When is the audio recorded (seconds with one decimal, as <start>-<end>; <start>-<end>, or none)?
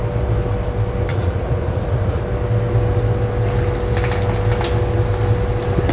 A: 0.0-1.1; 2.2-5.9